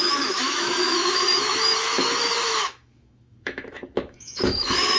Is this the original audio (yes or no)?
no